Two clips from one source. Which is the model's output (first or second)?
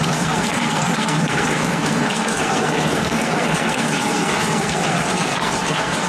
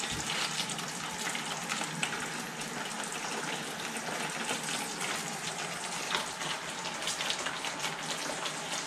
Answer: first